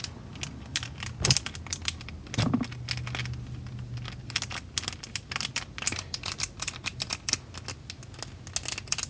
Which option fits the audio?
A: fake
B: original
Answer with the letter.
B